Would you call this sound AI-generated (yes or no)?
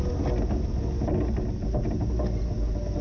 no